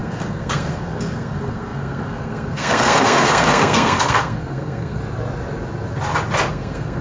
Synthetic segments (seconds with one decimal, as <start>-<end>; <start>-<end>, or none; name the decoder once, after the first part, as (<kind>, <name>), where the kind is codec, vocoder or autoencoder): 0.0-5.0 (codec, SNAC); 6.5-7.0